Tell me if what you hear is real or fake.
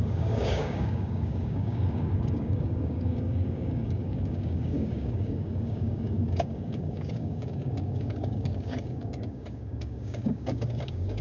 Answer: fake